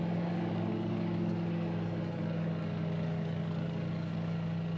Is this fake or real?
fake